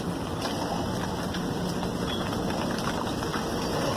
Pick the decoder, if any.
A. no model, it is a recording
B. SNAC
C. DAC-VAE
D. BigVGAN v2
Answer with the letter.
A